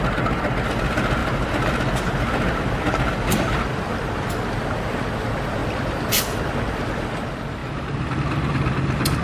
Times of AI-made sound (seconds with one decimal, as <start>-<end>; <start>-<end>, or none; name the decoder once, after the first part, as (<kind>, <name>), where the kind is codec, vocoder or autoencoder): 5.6-6.7 (vocoder, BigVGAN v2)